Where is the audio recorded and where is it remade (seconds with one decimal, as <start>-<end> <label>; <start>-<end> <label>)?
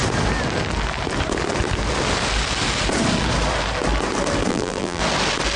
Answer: 0.0-4.5 recorded; 4.5-5.0 remade; 5.0-5.6 recorded